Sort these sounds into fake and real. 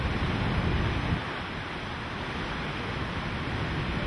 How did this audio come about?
real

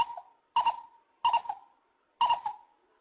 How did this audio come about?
real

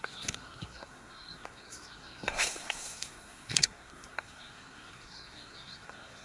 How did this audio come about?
fake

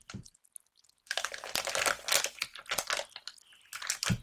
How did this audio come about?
real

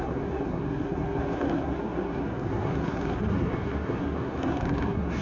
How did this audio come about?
fake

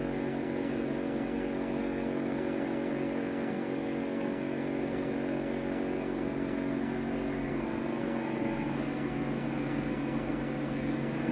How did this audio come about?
fake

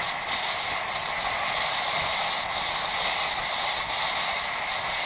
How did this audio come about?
real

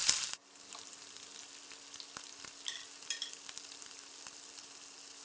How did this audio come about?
real